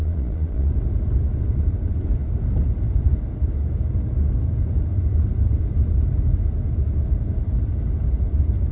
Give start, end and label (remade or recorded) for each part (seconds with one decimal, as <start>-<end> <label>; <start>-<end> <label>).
0.0-0.7 remade; 0.7-8.7 recorded